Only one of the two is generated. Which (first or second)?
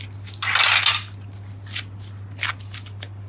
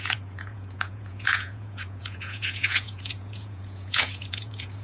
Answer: second